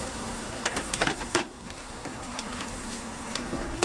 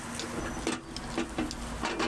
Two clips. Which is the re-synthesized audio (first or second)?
first